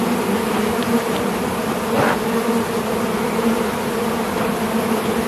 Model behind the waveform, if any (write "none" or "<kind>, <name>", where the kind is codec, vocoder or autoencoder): none